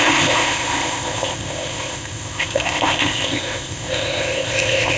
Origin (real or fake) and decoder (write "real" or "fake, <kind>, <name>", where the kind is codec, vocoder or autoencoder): fake, codec, ZipCodec